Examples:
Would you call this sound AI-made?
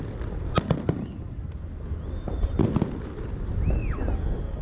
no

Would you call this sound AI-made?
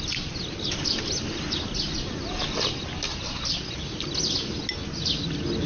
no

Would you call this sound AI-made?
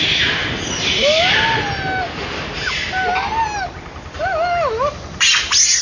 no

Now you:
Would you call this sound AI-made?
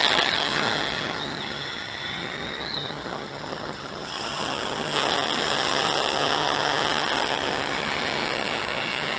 yes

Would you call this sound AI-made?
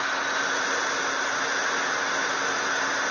no